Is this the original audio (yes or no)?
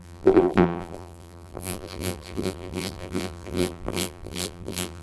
no